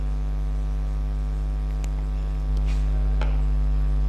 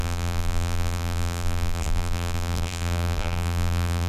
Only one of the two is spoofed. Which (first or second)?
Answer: second